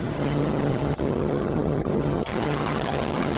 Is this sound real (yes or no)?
no